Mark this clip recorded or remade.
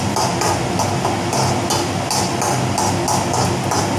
recorded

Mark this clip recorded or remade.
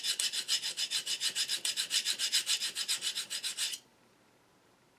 remade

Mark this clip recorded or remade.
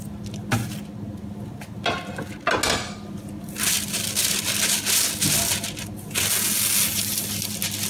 recorded